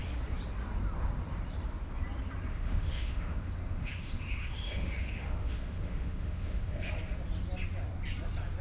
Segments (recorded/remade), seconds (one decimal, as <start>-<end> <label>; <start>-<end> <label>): 0.0-2.5 recorded; 2.5-6.9 remade; 6.9-8.6 recorded